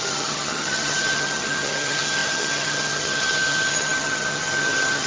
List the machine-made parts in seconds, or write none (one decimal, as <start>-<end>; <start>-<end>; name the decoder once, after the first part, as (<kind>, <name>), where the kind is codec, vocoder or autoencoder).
0.0-5.1 (vocoder, HiFi-GAN)